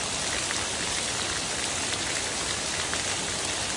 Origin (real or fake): real